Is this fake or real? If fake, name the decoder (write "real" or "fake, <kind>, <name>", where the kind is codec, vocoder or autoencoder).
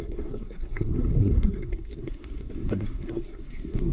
fake, codec, SNAC